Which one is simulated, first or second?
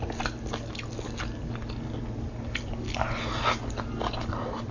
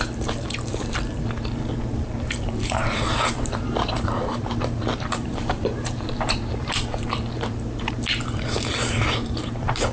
second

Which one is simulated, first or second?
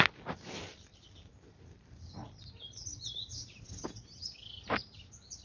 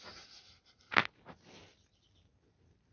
first